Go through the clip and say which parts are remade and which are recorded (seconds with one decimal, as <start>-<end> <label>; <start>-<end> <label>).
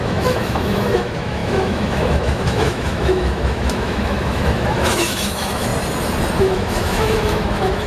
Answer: 0.0-5.7 remade; 5.7-6.4 recorded; 6.4-7.9 remade